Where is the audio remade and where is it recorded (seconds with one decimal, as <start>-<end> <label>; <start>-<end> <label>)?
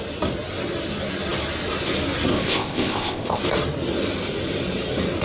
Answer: 0.0-2.3 recorded; 2.3-3.4 remade; 3.4-5.2 recorded